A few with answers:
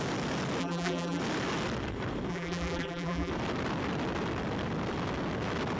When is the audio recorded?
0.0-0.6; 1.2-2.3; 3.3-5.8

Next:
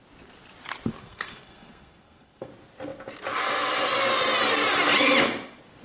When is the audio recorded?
0.0-1.0; 2.5-5.8

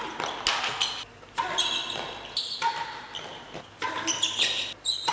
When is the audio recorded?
0.0-5.1

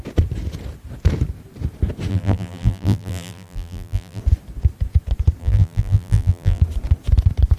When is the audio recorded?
0.0-2.1; 4.2-5.4; 6.6-7.6

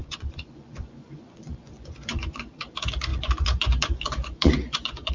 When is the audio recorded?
2.5-3.1

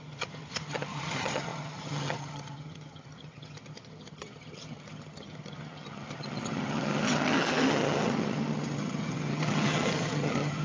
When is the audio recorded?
none

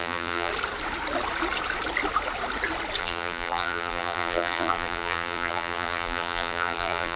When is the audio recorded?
0.5-3.0

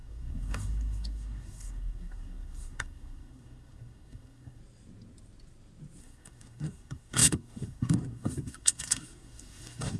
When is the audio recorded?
4.6-6.0